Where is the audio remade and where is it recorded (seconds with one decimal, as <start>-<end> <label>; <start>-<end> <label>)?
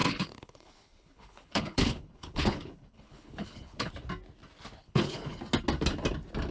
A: 0.0-3.9 remade; 3.9-4.8 recorded; 4.8-5.4 remade; 5.4-6.5 recorded